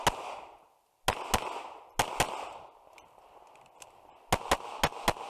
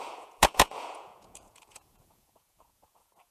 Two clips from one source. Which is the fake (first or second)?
second